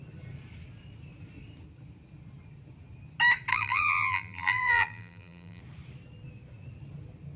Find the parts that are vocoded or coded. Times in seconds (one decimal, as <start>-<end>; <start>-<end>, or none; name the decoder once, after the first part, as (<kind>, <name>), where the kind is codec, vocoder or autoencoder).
3.5-5.6 (vocoder, BigVGAN v2)